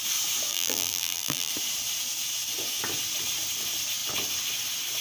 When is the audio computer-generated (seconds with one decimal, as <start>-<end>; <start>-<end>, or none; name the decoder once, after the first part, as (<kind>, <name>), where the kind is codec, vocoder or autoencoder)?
0.5-1.5 (vocoder, BigVGAN v2)

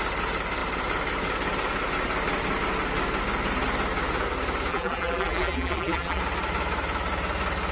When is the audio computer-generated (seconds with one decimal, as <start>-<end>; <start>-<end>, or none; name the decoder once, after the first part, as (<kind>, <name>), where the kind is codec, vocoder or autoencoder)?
4.7-6.2 (vocoder, BigVGAN v2)

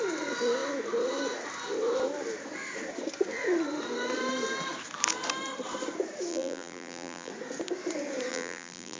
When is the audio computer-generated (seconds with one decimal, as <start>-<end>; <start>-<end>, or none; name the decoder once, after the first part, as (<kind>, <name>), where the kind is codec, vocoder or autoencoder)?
6.3-7.3 (vocoder, BigVGAN v2); 8.3-9.0

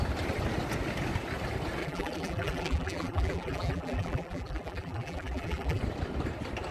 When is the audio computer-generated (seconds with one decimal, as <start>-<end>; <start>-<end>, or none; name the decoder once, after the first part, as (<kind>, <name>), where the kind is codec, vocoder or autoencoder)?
1.8-5.8 (vocoder, BigVGAN v2)

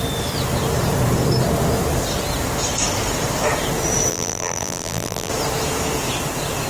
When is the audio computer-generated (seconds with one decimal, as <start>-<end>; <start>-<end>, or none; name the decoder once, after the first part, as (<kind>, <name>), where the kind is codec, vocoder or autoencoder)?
4.1-5.3 (vocoder, BigVGAN v2)

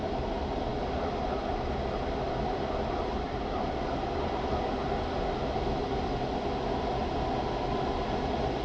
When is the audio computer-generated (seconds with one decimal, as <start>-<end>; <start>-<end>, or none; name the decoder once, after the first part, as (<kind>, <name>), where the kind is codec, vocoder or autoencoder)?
none